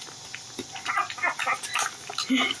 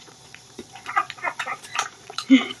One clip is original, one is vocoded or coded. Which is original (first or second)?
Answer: first